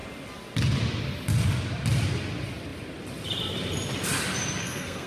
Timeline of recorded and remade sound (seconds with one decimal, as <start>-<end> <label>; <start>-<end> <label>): 0.0-4.6 recorded; 4.6-5.1 remade